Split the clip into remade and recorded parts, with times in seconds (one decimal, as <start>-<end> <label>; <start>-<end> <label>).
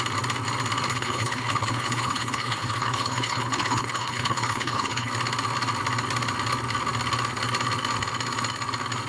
0.0-0.9 recorded; 0.9-5.1 remade; 5.1-9.1 recorded